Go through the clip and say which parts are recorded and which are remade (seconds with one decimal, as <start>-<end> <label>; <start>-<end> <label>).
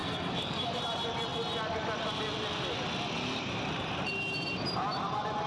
0.0-0.8 remade; 0.8-5.5 recorded